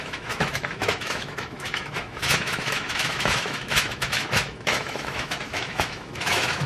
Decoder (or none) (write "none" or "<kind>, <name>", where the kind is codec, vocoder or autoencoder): autoencoder, DAC-VAE